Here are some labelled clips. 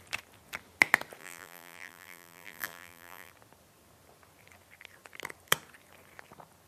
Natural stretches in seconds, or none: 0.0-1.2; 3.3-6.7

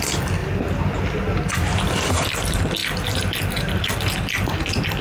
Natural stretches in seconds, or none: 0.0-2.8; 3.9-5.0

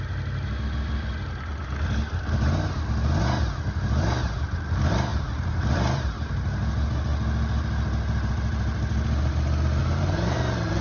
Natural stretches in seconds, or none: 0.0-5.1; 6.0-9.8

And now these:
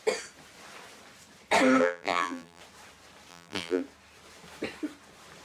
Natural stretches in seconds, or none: 0.0-1.8; 2.6-3.3; 3.8-5.4

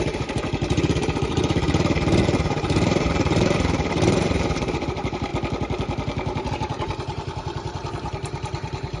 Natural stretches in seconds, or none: 5.3-6.5

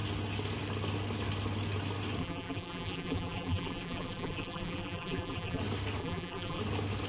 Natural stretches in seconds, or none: 0.0-2.2; 5.6-6.0; 6.6-7.1

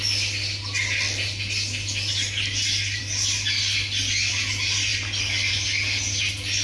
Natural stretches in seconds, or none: 0.0-6.6